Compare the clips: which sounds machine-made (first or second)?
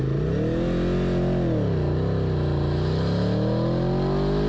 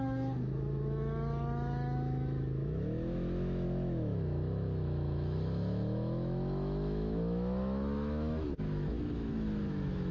second